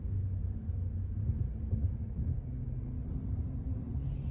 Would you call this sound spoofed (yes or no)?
no